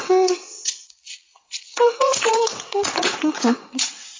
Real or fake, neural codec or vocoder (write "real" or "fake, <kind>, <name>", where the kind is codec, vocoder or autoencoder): fake, vocoder, WaveNeXt